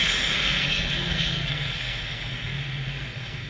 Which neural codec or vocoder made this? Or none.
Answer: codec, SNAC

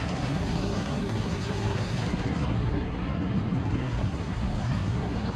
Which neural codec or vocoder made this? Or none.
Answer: codec, SNAC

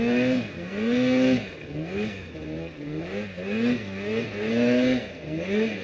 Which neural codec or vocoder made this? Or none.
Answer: codec, SNAC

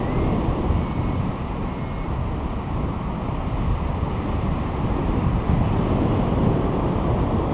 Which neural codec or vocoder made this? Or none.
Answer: none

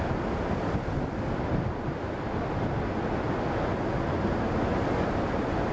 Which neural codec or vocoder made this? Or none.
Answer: none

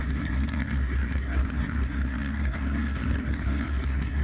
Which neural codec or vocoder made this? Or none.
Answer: codec, SNAC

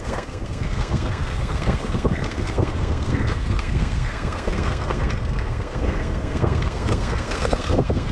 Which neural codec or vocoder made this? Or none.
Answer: codec, SNAC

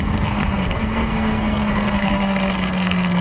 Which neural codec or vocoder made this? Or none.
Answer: codec, SNAC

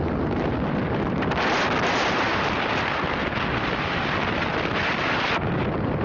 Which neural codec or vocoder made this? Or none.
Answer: none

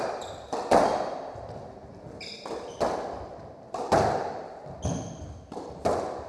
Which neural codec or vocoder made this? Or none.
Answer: none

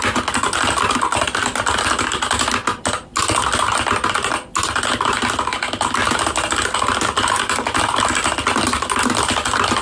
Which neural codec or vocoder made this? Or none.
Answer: none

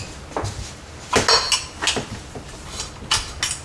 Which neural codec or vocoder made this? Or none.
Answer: none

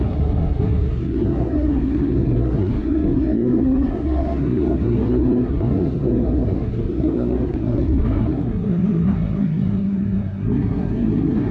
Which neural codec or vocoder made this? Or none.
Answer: codec, SNAC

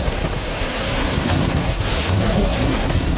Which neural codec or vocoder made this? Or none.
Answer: codec, SNAC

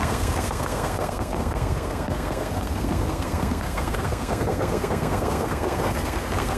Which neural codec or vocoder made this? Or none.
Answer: codec, SNAC